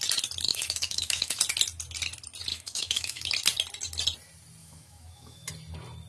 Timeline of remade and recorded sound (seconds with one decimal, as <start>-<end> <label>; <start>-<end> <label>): 0.0-0.5 recorded; 0.5-1.4 remade; 1.4-2.5 recorded; 2.5-3.3 remade; 3.3-4.6 recorded; 4.6-5.5 remade; 5.5-6.1 recorded

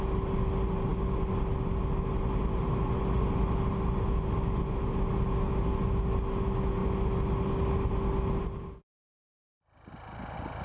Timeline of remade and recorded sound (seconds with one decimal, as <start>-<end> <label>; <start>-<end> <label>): 0.0-10.6 recorded